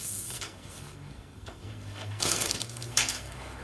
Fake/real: fake